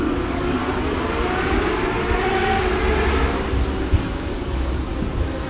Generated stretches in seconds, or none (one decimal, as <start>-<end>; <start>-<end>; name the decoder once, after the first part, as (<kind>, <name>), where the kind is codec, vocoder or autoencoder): 0.0-0.6 (codec, DAC); 3.9-4.9